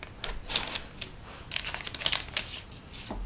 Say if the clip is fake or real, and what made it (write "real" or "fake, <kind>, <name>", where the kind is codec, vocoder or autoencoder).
real